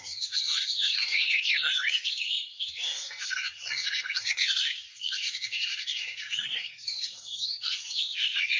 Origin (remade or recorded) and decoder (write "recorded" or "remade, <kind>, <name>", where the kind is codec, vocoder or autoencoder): remade, codec, SNAC